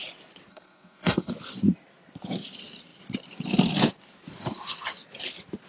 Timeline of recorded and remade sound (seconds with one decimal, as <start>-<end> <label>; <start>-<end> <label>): 0.0-0.5 recorded; 0.5-1.3 remade; 1.3-5.7 recorded